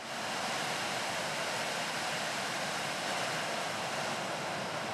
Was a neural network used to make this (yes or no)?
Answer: no